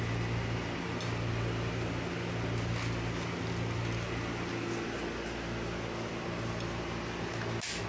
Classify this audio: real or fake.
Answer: real